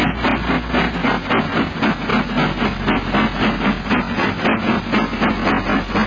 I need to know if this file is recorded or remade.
recorded